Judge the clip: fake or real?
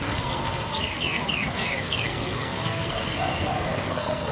fake